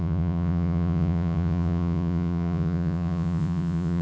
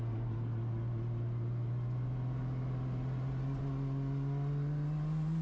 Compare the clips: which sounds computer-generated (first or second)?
first